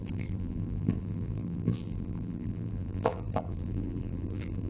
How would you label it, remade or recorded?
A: remade